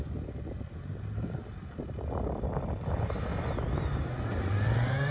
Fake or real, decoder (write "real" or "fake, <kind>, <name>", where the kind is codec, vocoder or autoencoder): real